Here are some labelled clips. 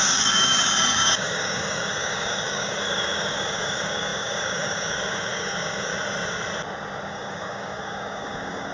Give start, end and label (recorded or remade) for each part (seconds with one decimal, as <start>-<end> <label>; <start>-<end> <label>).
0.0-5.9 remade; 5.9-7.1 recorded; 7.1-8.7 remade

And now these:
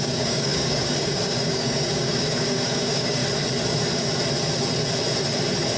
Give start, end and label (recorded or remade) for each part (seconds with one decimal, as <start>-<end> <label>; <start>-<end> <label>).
0.0-3.2 remade; 3.2-5.8 recorded

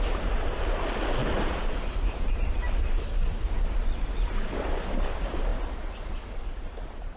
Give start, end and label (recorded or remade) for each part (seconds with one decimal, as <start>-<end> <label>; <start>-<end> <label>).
0.0-7.2 recorded

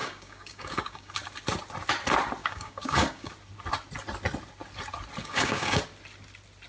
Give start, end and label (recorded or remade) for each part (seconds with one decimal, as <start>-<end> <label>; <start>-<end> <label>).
0.0-1.1 remade; 1.1-2.4 recorded; 2.4-3.3 remade; 3.3-5.2 recorded; 5.2-5.8 remade; 5.8-6.7 recorded

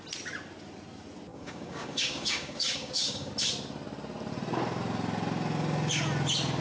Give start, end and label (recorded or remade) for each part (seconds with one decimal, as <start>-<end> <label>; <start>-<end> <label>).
0.0-1.3 recorded; 1.3-3.3 remade; 3.3-6.6 recorded

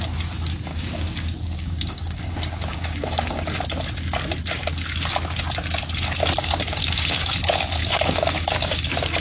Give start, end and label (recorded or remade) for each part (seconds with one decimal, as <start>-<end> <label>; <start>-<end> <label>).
0.0-0.7 recorded; 0.7-2.3 remade; 2.3-2.7 recorded; 2.7-3.6 remade; 3.6-6.8 recorded; 6.8-7.3 remade; 7.3-7.8 recorded; 7.8-9.2 remade

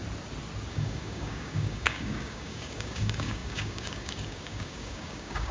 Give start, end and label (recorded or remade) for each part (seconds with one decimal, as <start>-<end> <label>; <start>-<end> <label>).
0.0-0.7 recorded; 0.7-5.5 remade

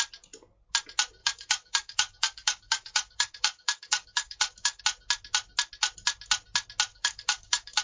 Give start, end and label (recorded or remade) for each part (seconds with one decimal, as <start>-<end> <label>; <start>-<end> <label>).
0.0-1.2 recorded; 1.2-4.8 remade; 4.8-6.9 recorded; 6.9-7.8 remade